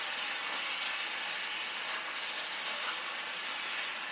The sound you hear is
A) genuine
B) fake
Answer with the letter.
A